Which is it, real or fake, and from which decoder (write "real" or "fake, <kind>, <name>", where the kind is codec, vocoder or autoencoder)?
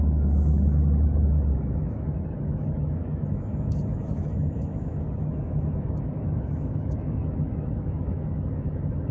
fake, autoencoder, DAC-VAE